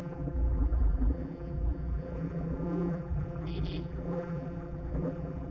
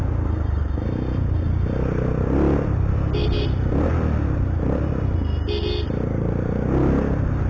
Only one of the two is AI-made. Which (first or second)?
first